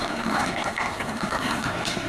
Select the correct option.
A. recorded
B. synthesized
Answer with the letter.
B